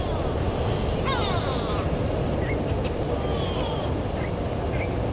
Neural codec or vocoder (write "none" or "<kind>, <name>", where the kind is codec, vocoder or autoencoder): none